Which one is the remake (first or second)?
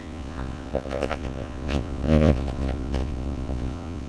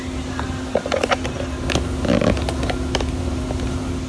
first